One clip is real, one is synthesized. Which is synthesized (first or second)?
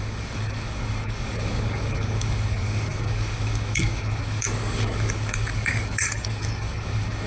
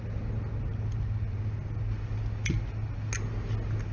first